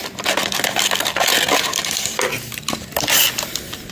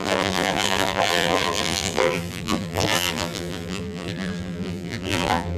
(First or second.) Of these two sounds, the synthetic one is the second